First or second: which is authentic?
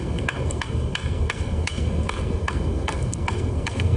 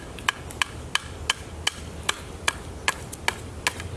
second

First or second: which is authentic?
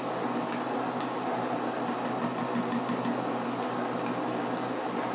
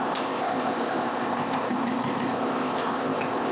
first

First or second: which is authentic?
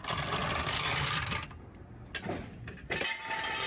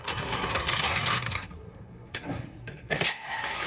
first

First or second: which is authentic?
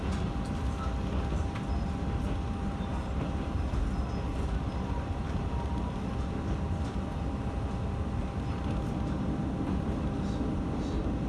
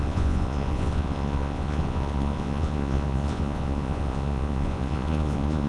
first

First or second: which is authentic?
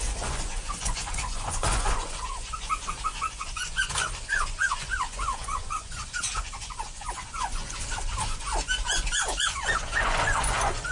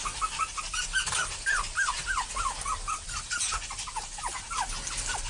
second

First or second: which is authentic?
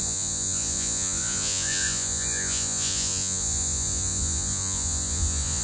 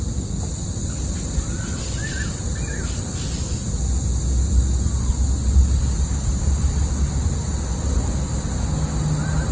second